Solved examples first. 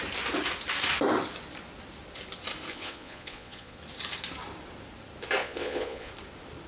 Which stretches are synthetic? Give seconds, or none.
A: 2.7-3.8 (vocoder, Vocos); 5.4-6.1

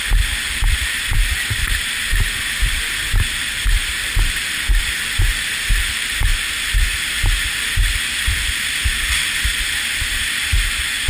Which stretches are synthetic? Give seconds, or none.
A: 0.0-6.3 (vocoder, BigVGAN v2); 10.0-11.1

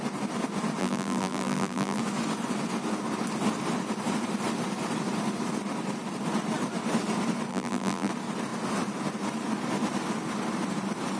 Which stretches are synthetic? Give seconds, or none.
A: 0.8-2.0 (vocoder, BigVGAN v2); 7.5-8.1

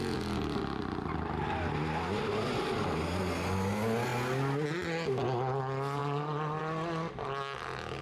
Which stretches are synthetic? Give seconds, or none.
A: none

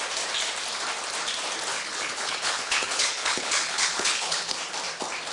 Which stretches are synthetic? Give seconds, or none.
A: 1.7-4.5 (codec, HILCodec)

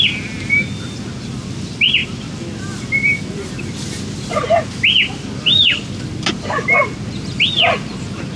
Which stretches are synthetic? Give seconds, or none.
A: none

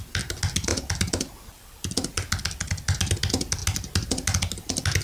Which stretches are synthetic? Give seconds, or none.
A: none